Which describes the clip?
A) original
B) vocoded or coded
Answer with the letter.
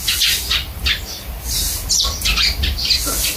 A